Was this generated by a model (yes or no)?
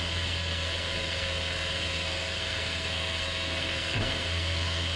yes